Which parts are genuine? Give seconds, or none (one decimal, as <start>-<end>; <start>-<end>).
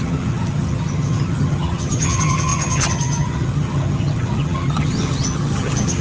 none